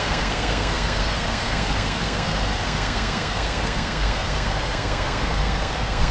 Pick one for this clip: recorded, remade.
remade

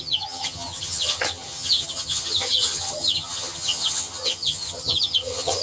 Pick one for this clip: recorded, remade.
remade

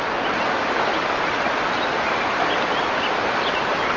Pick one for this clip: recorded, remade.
recorded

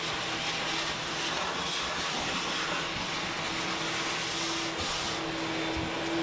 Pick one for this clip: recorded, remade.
recorded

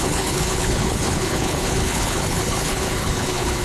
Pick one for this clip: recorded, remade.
remade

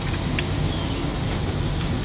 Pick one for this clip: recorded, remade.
recorded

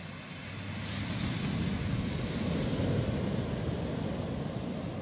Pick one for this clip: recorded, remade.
recorded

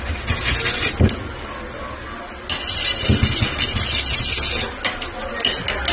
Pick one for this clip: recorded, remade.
recorded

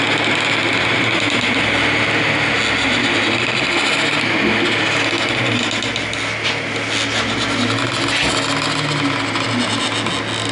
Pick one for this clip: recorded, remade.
recorded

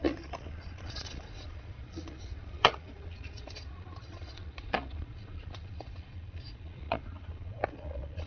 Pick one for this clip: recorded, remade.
remade